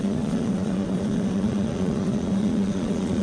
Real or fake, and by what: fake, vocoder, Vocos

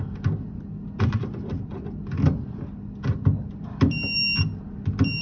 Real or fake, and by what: real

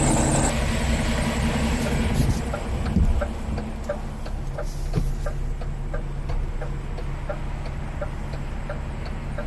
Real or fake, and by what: real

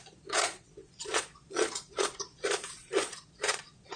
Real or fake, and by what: fake, vocoder, Vocos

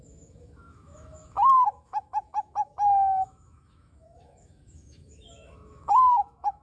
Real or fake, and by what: fake, autoencoder, DAC-VAE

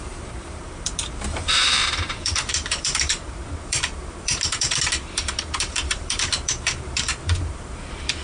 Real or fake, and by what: fake, vocoder, BigVGAN v2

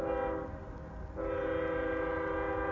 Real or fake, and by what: real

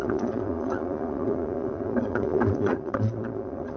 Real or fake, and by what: fake, vocoder, Vocos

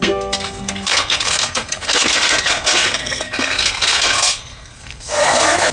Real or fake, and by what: fake, codec, SNAC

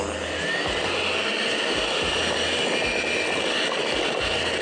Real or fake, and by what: real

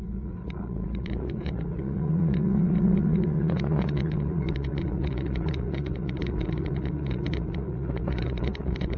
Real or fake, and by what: fake, vocoder, Vocos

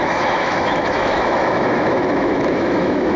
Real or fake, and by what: fake, autoencoder, DAC-VAE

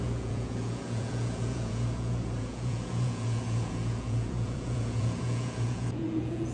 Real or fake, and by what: fake, vocoder, Vocos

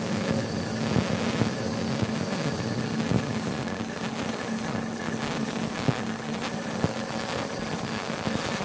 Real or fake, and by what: real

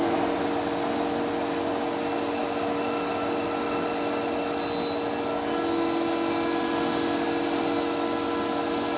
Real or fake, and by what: real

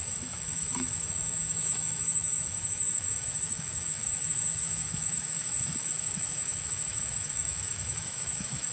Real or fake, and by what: fake, autoencoder, DAC-VAE